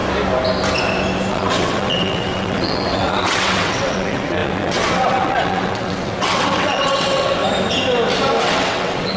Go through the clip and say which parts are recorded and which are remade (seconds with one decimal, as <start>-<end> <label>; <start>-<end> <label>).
0.0-1.3 recorded; 1.3-7.4 remade; 7.4-8.4 recorded; 8.4-9.2 remade

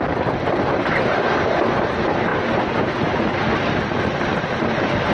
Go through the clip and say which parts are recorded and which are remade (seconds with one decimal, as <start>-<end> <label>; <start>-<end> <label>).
0.0-5.1 recorded

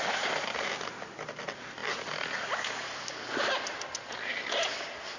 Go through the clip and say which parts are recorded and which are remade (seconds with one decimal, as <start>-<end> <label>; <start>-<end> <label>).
0.0-5.2 recorded